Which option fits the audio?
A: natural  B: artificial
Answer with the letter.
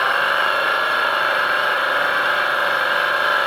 B